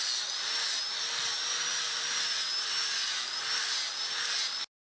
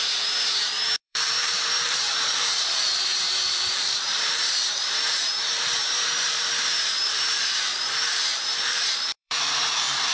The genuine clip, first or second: first